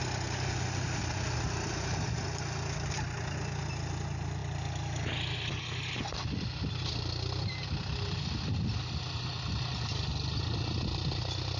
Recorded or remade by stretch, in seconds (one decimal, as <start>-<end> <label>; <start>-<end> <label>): 0.0-11.6 recorded